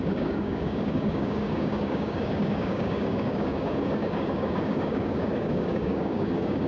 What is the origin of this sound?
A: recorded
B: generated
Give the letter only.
B